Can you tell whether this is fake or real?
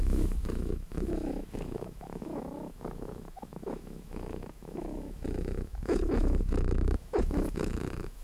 fake